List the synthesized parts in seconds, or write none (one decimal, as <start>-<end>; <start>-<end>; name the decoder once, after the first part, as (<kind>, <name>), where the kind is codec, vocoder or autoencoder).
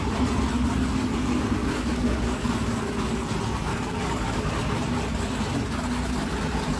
1.6-3.2 (codec, DAC); 3.7-4.5